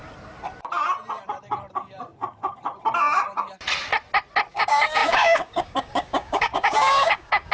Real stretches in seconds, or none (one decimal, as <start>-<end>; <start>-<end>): 0.0-4.5